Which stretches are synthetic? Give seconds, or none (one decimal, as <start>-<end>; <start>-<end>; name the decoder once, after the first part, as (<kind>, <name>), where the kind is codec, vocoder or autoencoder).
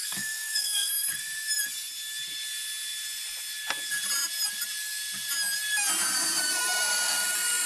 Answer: 0.0-0.9 (codec, SNAC)